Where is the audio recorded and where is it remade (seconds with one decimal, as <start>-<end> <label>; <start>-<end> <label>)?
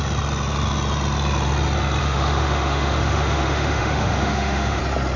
0.0-2.0 recorded; 2.0-4.8 remade; 4.8-5.2 recorded